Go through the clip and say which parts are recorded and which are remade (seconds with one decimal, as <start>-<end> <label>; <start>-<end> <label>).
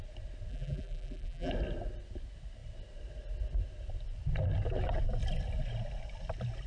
0.0-0.5 recorded; 0.5-1.5 remade; 1.5-6.7 recorded